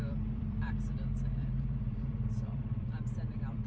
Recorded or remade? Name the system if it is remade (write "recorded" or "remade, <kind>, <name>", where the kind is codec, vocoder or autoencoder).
remade, vocoder, BigVGAN v2